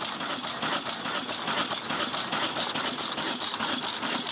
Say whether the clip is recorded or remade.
recorded